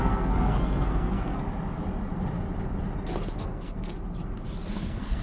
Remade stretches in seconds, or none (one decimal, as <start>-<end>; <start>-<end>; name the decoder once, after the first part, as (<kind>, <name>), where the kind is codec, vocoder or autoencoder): 0.0-1.4 (codec, SNAC); 3.4-3.9; 4.7-5.2